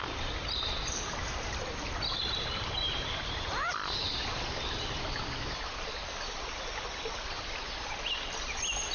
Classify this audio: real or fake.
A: fake